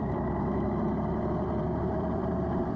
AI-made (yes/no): yes